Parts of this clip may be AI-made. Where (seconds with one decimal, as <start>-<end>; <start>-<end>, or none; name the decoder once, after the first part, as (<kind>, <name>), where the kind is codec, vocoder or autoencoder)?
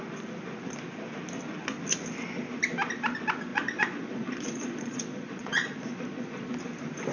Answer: 3.5-6.5 (vocoder, Vocos)